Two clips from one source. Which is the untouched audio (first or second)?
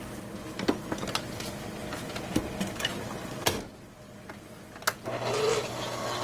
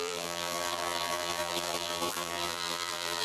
first